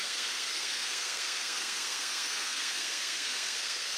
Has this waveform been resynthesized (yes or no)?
yes